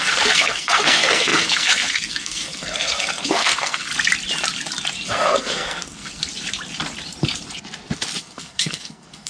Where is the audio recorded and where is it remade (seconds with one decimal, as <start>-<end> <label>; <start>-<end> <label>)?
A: 0.0-3.9 remade; 3.9-5.1 recorded; 5.1-6.2 remade; 6.2-8.2 recorded; 8.2-9.3 remade